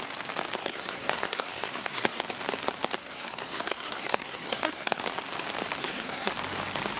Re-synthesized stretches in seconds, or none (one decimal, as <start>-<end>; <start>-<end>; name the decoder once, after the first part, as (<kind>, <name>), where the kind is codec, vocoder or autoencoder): 0.6-2.2 (codec, SNAC); 3.0-5.0; 5.8-6.3